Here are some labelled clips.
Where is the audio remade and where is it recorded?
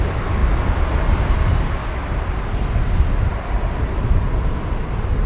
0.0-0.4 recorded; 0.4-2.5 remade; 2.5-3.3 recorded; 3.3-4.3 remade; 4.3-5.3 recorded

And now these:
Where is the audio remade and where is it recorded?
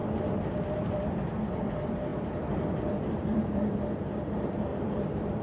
0.0-0.6 recorded; 0.6-2.1 remade; 2.1-3.1 recorded; 3.1-5.4 remade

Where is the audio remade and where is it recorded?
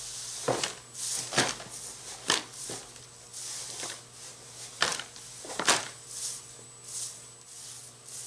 0.0-8.3 recorded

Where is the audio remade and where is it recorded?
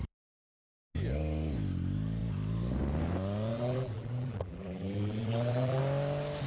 0.0-3.5 recorded; 3.5-5.8 remade; 5.8-6.5 recorded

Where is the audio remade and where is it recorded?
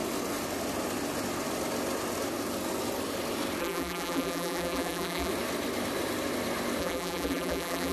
0.0-3.6 recorded; 3.6-5.3 remade; 5.3-6.8 recorded; 6.8-7.9 remade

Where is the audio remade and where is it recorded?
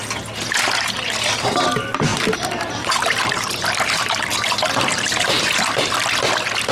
0.0-2.1 recorded; 2.1-6.1 remade; 6.1-6.7 recorded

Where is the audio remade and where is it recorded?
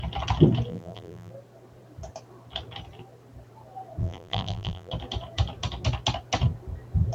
0.0-0.7 recorded; 0.7-1.3 remade; 1.3-4.0 recorded; 4.0-4.9 remade; 4.9-7.1 recorded